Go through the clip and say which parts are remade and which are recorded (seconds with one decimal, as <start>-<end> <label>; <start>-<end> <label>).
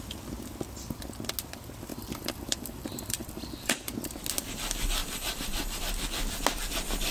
0.0-1.9 recorded; 1.9-3.9 remade; 3.9-5.0 recorded; 5.0-5.8 remade; 5.8-7.1 recorded